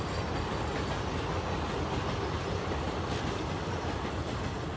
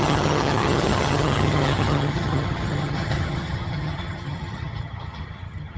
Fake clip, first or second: second